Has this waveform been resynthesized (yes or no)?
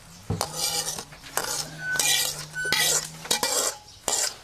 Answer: no